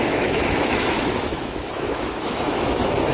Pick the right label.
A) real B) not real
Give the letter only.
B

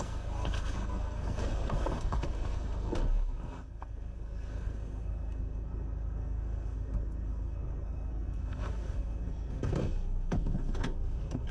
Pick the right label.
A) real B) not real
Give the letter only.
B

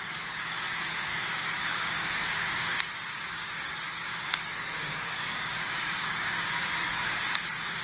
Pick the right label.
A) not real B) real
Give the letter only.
A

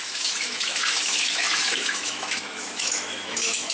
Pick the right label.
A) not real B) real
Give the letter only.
A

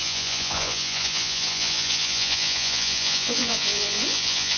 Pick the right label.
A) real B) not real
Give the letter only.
B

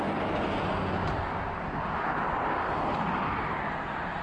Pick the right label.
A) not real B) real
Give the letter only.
B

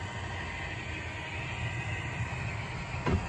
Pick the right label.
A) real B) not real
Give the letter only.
A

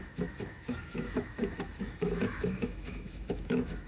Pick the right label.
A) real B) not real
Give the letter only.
B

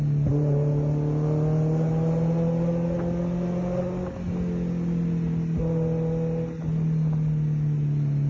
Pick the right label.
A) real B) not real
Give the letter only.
A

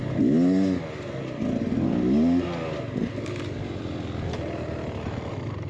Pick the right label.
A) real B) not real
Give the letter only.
A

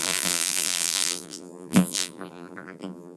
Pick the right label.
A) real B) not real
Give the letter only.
B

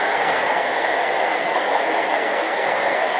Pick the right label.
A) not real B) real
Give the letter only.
A